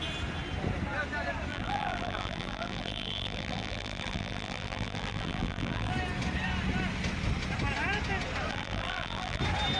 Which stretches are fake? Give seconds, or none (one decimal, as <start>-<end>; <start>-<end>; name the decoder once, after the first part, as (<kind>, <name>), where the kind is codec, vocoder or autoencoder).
1.5-5.9 (vocoder, BigVGAN v2); 8.5-9.4